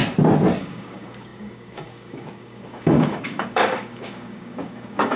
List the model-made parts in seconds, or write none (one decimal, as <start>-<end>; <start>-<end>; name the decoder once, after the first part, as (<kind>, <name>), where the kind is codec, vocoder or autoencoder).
0.6-5.2 (codec, DAC)

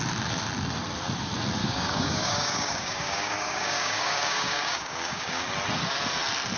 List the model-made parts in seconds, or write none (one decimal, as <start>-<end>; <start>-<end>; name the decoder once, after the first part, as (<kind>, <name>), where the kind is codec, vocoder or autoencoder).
1.6-5.5 (codec, DAC)